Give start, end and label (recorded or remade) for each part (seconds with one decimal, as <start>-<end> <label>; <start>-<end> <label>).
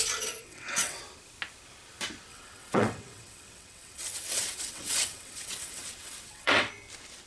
0.0-0.4 recorded; 0.4-1.0 remade; 1.0-2.3 recorded; 2.3-6.7 remade; 6.7-7.3 recorded